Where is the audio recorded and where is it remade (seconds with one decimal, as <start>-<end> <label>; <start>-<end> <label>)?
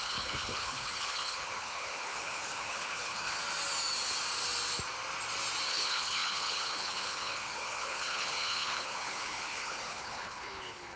0.0-3.4 remade; 3.4-5.7 recorded; 5.7-11.0 remade